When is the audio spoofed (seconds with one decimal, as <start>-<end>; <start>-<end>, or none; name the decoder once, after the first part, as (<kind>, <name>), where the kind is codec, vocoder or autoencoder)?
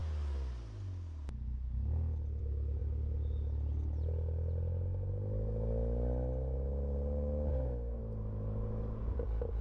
7.5-8.0 (codec, SNAC)